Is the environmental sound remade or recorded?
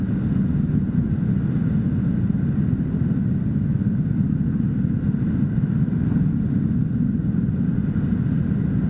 recorded